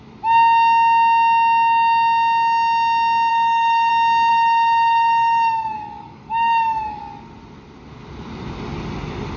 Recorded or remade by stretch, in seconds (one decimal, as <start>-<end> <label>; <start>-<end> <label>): 0.0-3.3 recorded; 3.3-3.9 remade; 3.9-4.3 recorded; 4.3-7.0 remade; 7.0-9.4 recorded

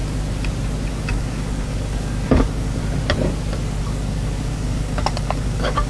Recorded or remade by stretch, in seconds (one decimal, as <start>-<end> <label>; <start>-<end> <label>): 0.0-0.9 recorded; 0.9-2.8 remade; 2.8-3.8 recorded; 3.8-5.9 remade

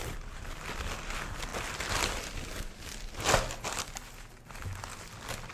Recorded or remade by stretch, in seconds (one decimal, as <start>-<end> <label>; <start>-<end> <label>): 0.0-5.5 recorded

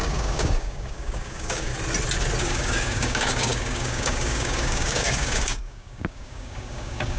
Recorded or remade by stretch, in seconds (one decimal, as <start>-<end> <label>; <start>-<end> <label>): 0.0-1.7 remade; 1.7-2.4 recorded; 2.4-7.2 remade

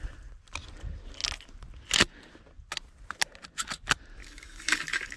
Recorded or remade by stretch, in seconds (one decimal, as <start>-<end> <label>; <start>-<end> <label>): 0.0-4.2 recorded; 4.2-5.2 remade

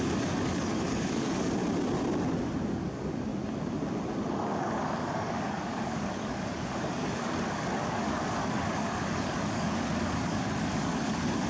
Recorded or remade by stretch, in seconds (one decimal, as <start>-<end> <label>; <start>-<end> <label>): 0.0-1.6 remade; 1.6-2.7 recorded; 2.7-3.3 remade; 3.3-4.3 recorded; 4.3-11.5 remade

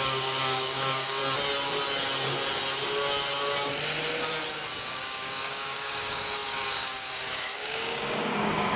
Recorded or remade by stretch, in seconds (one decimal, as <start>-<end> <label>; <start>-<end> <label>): 0.0-1.2 remade; 1.2-4.9 recorded; 4.9-8.8 remade